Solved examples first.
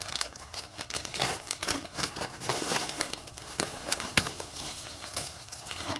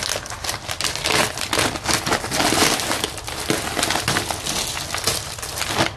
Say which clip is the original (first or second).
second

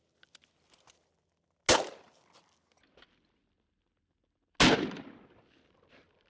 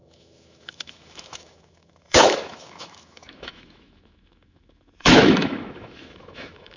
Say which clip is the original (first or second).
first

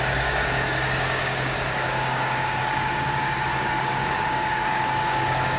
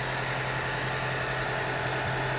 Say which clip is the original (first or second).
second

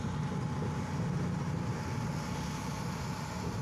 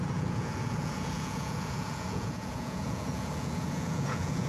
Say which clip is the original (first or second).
first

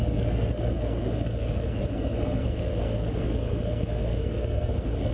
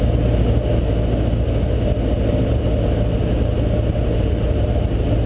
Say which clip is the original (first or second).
second